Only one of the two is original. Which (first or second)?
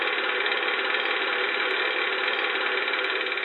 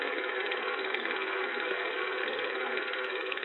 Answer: first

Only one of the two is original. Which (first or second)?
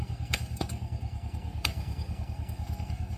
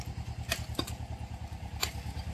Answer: second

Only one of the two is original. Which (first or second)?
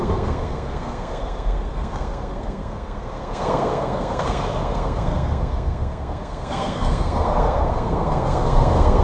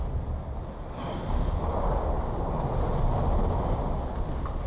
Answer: second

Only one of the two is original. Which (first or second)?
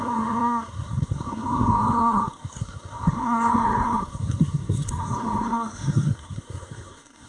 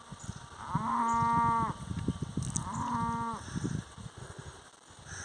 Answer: second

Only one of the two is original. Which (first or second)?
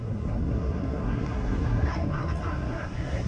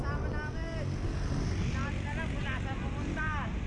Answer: second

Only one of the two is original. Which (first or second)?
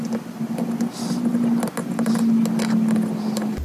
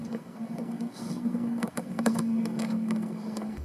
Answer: first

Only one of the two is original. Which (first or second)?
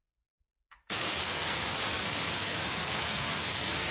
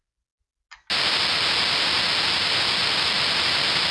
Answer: second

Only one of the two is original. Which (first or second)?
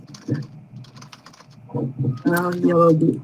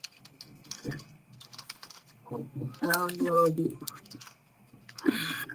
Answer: first